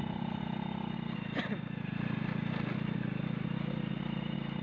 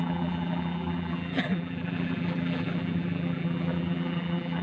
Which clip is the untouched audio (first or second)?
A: first